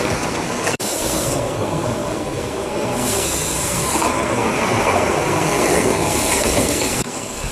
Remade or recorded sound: remade